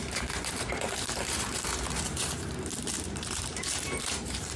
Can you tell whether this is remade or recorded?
remade